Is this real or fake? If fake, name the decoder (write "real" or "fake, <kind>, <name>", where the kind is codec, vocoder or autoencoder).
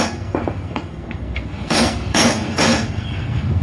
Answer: fake, codec, SNAC